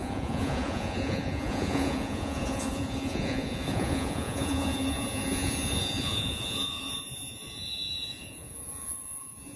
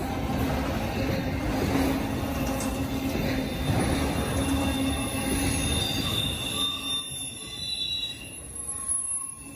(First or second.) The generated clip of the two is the first